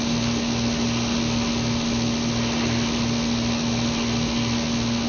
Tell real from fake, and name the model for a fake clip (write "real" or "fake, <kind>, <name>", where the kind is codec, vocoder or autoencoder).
real